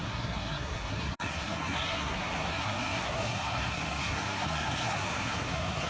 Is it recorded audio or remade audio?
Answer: remade